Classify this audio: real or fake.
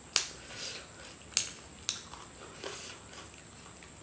real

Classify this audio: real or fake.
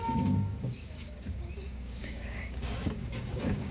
fake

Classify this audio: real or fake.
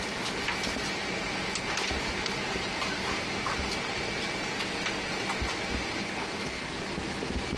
real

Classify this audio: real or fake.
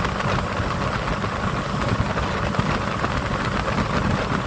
real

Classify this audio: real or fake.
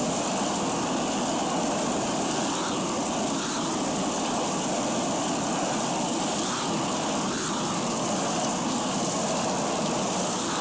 real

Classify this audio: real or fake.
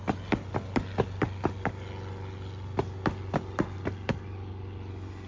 real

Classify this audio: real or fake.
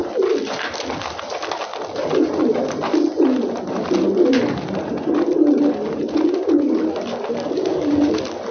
real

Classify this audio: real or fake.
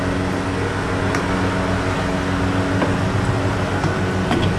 real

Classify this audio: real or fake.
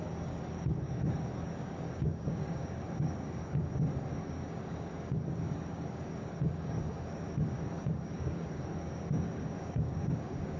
fake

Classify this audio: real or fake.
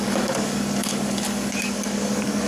fake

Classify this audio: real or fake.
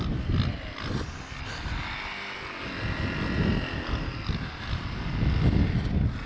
real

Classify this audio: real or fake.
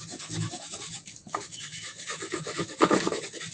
fake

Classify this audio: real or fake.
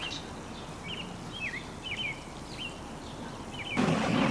real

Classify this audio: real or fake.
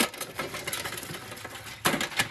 real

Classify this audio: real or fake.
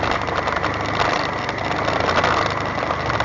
real